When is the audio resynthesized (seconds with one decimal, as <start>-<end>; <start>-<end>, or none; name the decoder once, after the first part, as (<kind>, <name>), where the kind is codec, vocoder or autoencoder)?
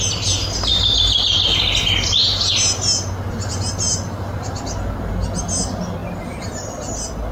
none